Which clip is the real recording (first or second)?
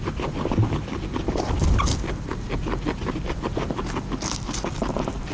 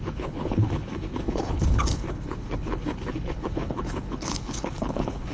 first